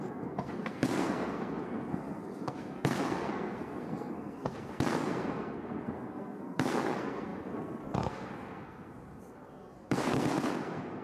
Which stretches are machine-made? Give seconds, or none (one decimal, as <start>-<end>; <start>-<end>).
0.0-11.0